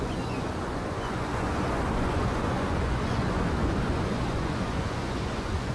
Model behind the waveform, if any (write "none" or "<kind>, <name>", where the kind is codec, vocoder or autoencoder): vocoder, Vocos